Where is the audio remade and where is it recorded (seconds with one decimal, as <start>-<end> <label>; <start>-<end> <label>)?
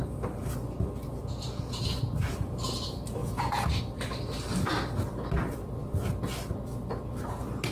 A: 0.0-1.2 recorded; 1.2-2.3 remade; 2.3-3.2 recorded; 3.2-3.8 remade; 3.8-7.7 recorded